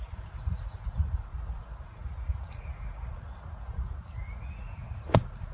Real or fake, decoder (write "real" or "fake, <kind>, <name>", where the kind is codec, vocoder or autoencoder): fake, vocoder, Vocos